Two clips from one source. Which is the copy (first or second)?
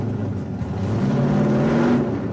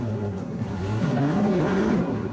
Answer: second